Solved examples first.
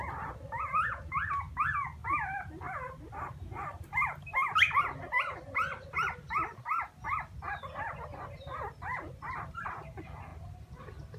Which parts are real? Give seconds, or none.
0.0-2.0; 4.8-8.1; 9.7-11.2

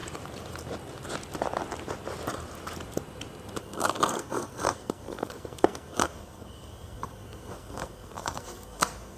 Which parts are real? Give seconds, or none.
0.0-3.6

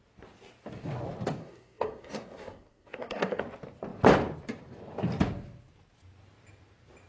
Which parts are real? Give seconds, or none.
0.0-1.4; 3.4-7.1

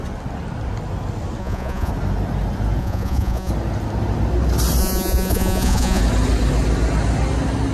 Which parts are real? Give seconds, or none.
0.0-1.4; 1.9-2.8; 3.5-4.8; 6.0-7.7

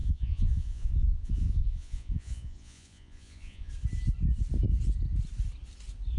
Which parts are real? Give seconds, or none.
3.7-6.2

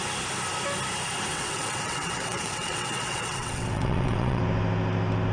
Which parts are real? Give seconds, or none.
0.0-1.3; 4.4-5.3

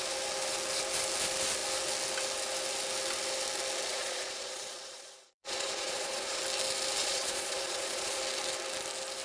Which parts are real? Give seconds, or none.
0.0-3.9; 6.4-7.0; 8.2-9.2

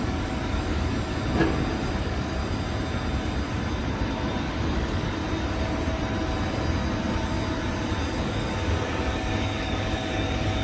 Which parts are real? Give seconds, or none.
1.1-2.0; 2.4-4.4; 5.2-8.2